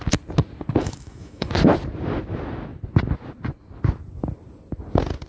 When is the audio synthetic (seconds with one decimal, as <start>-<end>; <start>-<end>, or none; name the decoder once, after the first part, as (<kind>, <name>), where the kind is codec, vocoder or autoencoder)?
0.8-1.5 (autoencoder, DAC-VAE)